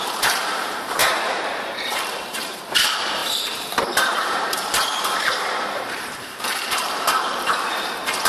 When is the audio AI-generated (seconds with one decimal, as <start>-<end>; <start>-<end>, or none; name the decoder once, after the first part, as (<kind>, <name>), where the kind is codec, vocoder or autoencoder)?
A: 0.0-8.3 (vocoder, BigVGAN v2)